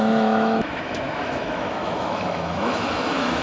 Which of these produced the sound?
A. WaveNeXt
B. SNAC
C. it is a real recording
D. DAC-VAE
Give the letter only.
D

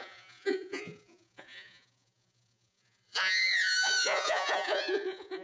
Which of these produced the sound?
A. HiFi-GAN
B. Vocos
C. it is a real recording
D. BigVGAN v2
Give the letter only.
B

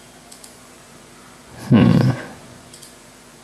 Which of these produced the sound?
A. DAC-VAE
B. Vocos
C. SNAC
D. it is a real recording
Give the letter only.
B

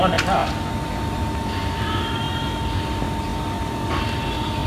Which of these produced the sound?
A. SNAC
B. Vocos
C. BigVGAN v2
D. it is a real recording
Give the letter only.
D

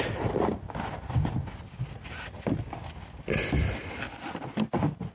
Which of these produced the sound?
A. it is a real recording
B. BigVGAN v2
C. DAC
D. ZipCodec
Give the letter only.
A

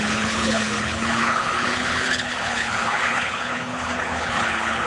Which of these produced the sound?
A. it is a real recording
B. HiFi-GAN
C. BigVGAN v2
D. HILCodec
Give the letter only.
D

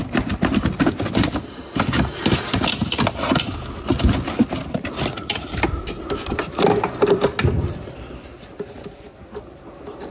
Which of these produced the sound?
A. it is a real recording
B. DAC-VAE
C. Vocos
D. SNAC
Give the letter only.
A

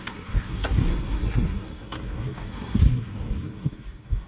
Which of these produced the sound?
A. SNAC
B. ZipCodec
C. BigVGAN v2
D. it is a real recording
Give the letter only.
A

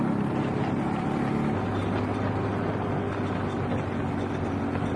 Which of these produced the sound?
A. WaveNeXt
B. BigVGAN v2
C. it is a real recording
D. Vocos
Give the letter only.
C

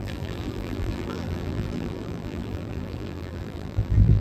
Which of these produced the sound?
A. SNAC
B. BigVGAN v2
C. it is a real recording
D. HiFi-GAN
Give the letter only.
B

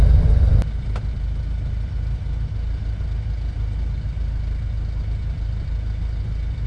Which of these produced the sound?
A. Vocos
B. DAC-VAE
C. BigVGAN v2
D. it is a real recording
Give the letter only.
D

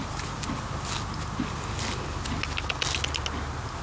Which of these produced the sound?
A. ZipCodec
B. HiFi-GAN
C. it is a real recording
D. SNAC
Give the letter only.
C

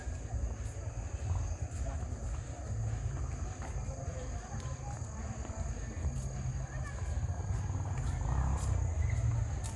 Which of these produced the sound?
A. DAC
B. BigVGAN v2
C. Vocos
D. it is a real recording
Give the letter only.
D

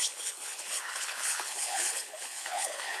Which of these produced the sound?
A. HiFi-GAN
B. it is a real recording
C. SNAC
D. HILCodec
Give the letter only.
D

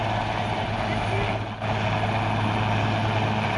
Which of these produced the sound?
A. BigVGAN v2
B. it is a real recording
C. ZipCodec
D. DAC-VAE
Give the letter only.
B